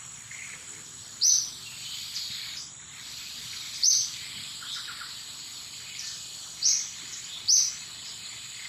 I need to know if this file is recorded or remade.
remade